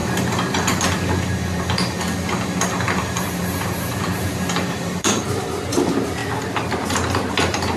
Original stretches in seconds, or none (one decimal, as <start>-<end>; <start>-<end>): 0.0-4.7; 6.2-7.3